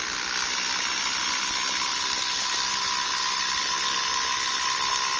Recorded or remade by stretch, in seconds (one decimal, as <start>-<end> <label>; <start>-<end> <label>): 0.0-5.2 recorded